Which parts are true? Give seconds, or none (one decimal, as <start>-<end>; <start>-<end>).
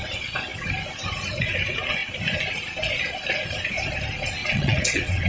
0.0-4.4